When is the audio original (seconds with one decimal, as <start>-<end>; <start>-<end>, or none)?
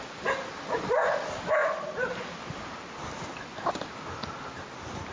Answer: 0.0-5.1